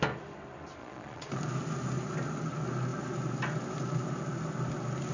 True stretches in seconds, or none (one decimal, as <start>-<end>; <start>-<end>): 0.0-0.8; 1.4-5.1